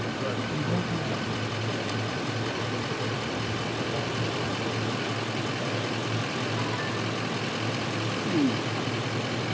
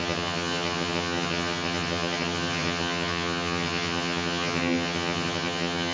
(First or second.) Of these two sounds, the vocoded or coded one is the second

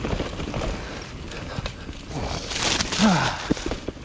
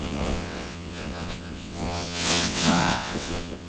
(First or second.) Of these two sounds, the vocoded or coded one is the second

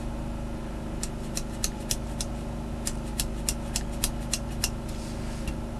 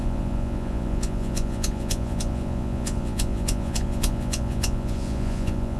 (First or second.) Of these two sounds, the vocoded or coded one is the second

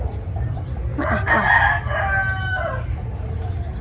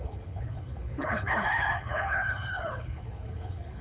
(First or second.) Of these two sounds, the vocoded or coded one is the second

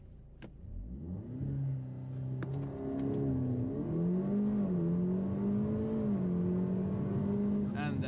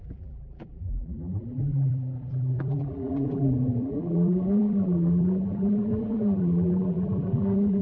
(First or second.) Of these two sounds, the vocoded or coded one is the second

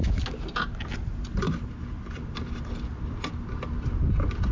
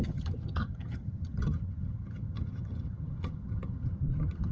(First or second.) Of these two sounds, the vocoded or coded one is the second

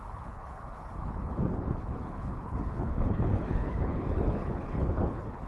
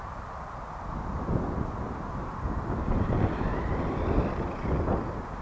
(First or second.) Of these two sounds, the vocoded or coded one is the first